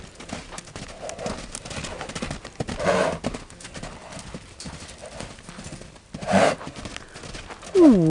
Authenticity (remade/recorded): recorded